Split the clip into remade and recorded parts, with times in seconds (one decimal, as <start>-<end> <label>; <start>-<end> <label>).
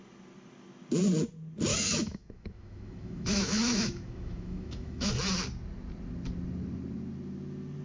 0.0-1.7 recorded; 1.7-5.1 remade; 5.1-7.8 recorded